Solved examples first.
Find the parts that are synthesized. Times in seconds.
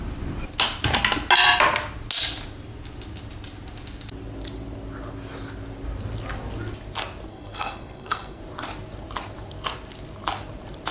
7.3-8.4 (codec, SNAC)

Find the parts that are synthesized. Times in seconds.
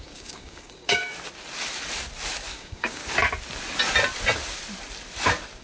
0.0-1.0 (codec, DAC); 2.5-3.0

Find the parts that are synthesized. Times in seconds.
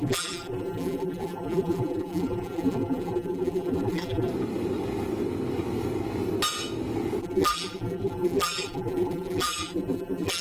0.0-4.3 (vocoder, BigVGAN v2); 7.2-10.4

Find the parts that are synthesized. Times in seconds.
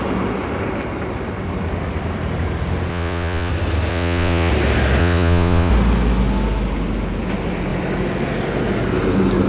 2.9-3.5 (vocoder, Vocos); 3.9-4.5; 5.0-5.7